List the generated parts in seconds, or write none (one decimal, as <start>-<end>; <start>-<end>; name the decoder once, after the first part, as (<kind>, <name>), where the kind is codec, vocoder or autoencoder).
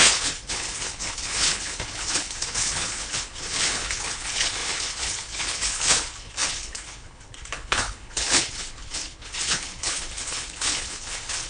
0.0-11.5 (codec, HILCodec)